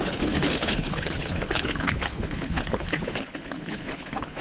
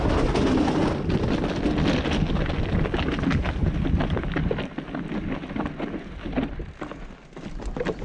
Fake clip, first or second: first